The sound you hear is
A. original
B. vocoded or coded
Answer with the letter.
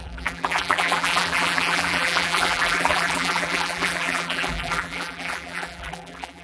B